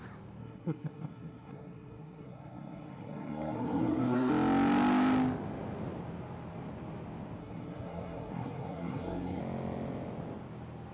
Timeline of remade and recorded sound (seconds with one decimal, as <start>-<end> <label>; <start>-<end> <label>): 0.0-0.4 recorded; 0.4-4.3 remade; 4.3-7.4 recorded; 7.4-9.4 remade; 9.4-10.9 recorded